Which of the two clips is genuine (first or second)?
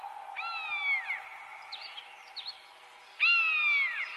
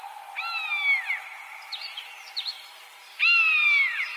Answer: first